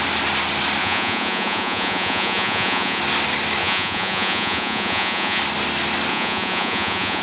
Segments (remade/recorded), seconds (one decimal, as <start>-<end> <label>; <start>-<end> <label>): 0.0-0.8 recorded; 0.8-3.0 remade; 3.0-3.6 recorded; 3.6-5.4 remade; 5.4-6.1 recorded; 6.1-7.2 remade